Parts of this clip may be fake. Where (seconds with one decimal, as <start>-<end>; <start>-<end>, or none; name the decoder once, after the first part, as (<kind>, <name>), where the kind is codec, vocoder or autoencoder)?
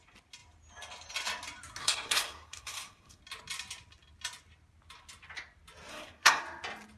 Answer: 1.8-3.2 (codec, SNAC); 5.9-6.4